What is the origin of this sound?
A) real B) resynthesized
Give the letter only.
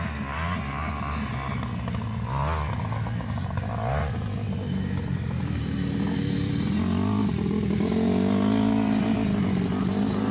A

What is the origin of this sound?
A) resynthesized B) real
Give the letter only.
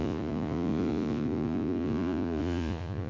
A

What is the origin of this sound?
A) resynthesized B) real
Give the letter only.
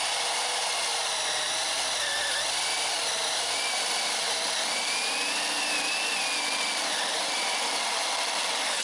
B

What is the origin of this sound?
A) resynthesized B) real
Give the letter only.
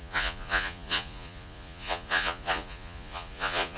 A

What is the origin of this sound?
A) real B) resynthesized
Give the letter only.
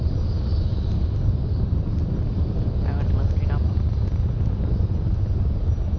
A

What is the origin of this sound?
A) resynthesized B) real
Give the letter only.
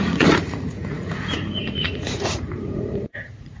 A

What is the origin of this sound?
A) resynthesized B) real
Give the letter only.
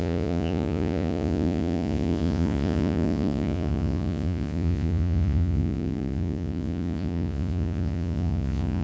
A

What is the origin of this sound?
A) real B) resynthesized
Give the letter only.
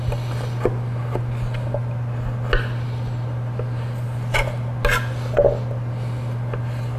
A